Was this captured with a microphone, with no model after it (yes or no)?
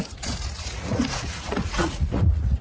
no